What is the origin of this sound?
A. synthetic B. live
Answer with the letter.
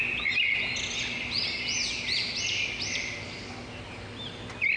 B